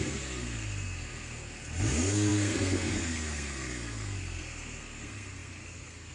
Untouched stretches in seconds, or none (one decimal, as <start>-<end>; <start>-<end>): none